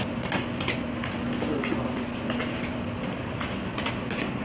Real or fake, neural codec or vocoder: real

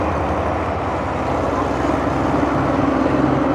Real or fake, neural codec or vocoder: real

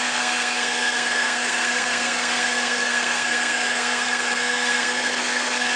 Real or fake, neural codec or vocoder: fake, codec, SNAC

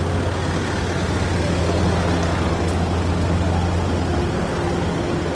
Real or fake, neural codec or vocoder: real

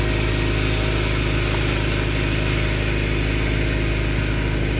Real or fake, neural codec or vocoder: real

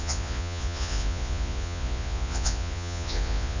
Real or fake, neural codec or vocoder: fake, vocoder, Vocos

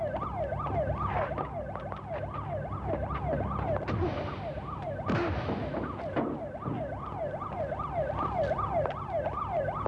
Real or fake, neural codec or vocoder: real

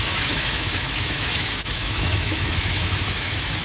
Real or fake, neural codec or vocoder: fake, autoencoder, DAC-VAE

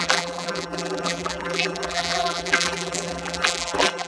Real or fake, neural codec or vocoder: fake, vocoder, BigVGAN v2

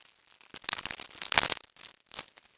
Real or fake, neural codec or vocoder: real